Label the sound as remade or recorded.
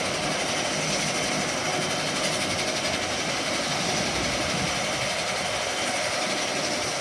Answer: recorded